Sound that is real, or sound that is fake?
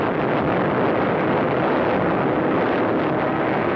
real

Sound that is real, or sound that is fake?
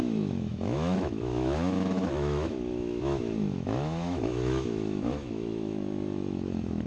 fake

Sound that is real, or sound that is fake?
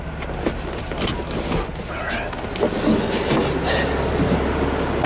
real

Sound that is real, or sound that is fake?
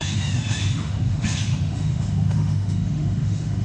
fake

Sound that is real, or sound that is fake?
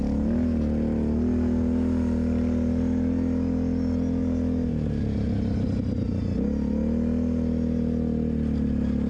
real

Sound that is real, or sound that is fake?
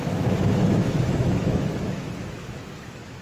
fake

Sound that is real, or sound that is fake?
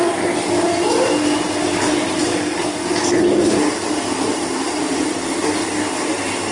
real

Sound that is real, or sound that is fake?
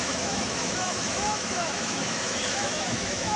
fake